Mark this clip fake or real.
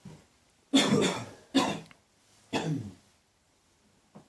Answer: real